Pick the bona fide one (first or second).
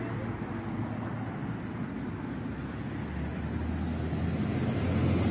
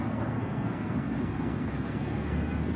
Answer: first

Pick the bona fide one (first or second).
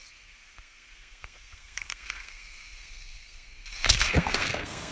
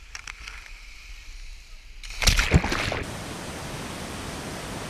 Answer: second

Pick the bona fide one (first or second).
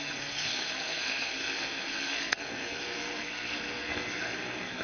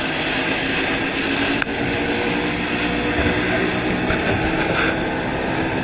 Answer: second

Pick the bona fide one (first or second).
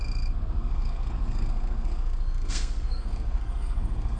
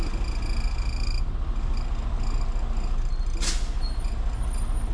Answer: second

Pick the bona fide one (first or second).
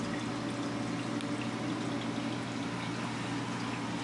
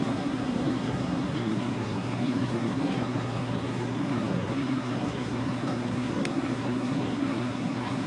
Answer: first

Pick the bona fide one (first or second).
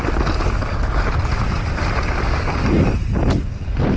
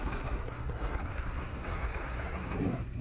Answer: first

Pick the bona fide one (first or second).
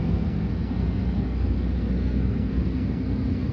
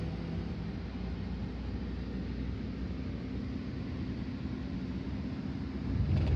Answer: second